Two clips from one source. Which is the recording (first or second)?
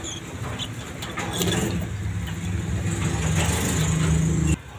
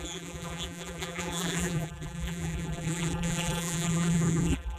first